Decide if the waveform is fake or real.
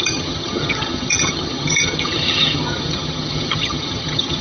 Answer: fake